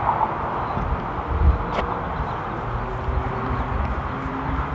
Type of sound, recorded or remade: recorded